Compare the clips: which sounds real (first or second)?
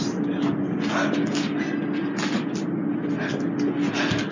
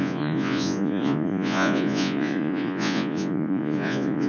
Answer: first